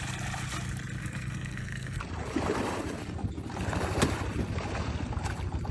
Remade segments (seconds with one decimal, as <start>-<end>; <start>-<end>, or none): 1.0-2.0